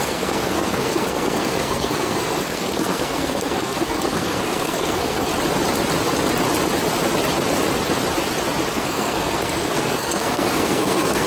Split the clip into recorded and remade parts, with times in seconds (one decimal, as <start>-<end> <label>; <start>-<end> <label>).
0.0-5.3 remade; 5.3-8.7 recorded; 8.7-11.3 remade